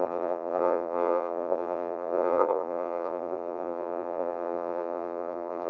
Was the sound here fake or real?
fake